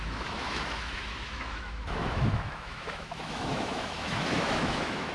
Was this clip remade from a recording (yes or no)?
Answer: yes